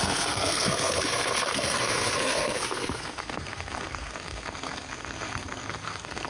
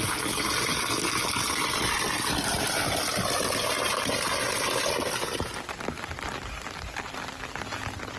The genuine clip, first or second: second